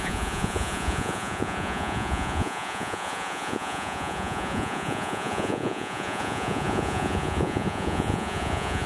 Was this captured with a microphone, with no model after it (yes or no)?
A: no